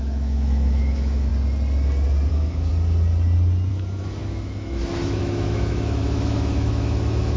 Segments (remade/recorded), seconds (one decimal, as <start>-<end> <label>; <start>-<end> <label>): 0.0-1.3 remade; 1.3-2.3 recorded; 2.3-2.7 remade; 2.7-3.7 recorded; 3.7-7.4 remade